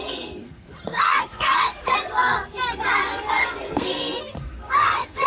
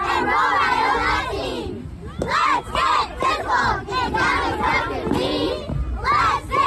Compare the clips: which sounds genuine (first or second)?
second